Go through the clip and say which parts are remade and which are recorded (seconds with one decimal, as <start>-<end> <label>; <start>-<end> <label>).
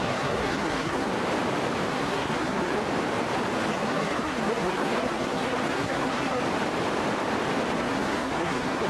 0.0-1.1 remade; 1.1-1.9 recorded; 1.9-2.8 remade; 2.8-3.7 recorded; 3.7-6.4 remade; 6.4-7.8 recorded; 7.8-8.9 remade